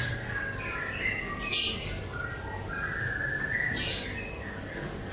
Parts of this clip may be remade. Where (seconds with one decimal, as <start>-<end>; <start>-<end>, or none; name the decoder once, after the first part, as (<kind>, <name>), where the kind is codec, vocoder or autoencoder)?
none